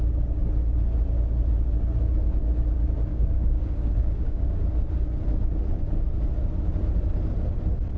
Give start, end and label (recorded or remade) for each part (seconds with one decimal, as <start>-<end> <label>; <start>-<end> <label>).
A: 0.0-3.1 recorded; 3.1-4.6 remade; 4.6-8.0 recorded